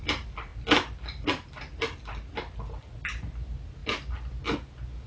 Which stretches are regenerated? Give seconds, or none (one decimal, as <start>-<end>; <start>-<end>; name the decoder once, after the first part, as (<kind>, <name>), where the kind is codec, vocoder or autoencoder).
3.8-4.4 (vocoder, BigVGAN v2)